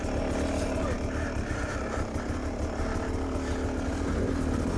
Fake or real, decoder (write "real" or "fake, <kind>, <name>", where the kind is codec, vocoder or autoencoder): real